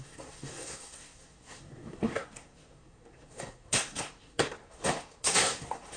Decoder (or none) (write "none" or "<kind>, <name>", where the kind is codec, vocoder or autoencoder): codec, SNAC